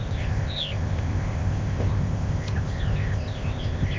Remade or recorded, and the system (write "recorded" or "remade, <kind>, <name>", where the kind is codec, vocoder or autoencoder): remade, codec, ZipCodec